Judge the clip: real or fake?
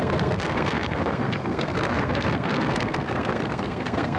fake